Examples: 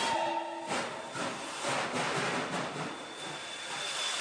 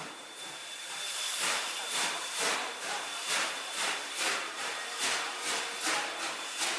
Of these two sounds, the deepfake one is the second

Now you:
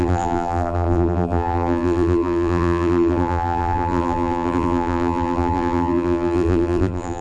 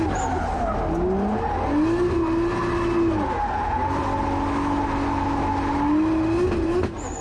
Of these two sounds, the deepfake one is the first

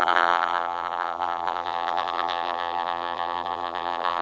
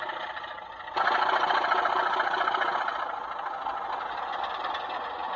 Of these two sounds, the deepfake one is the first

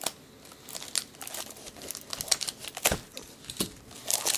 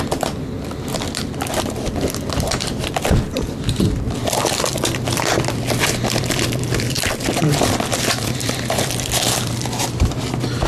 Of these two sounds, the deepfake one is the second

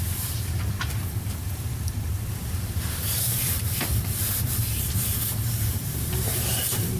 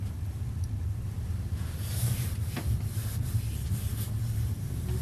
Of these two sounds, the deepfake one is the first